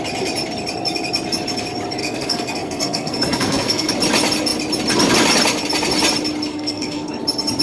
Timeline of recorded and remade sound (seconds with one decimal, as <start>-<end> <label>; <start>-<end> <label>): 0.0-2.0 recorded; 2.0-3.9 remade; 3.9-6.5 recorded; 6.5-7.1 remade; 7.1-7.6 recorded